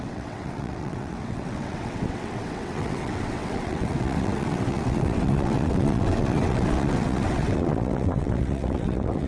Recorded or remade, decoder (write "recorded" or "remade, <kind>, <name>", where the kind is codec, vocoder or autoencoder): remade, vocoder, WaveNeXt